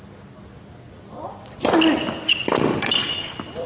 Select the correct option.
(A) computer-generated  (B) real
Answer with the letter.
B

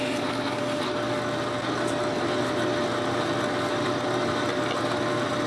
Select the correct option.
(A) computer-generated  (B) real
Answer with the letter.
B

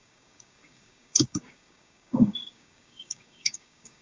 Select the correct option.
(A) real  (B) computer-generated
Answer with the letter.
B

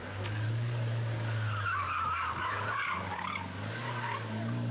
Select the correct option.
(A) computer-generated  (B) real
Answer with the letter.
A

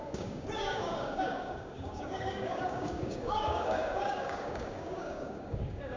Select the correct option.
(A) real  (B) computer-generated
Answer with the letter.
B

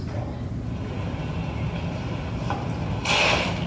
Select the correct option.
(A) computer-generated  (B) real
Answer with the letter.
B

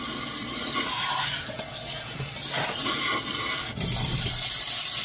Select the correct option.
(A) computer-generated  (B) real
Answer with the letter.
B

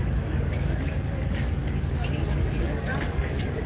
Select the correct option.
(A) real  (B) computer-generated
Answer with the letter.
B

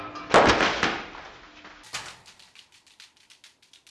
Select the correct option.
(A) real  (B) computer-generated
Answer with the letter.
A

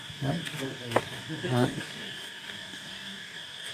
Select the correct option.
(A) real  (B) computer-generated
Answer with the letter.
B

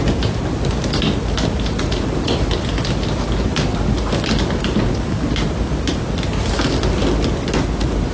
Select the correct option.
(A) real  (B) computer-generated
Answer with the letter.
A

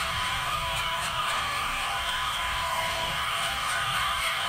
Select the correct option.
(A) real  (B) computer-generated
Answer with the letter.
B